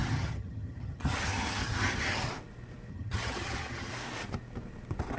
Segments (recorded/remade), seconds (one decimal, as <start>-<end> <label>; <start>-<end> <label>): 0.0-2.3 remade; 2.3-2.9 recorded; 2.9-3.9 remade; 3.9-5.2 recorded